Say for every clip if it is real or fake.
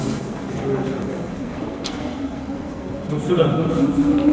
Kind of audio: fake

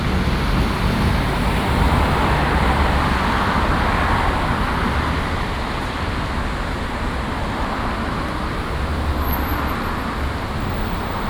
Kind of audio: real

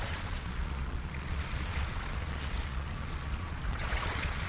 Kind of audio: fake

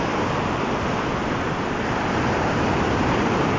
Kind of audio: real